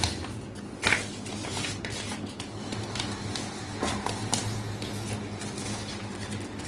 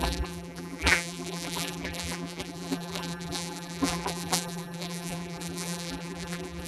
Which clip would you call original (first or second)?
first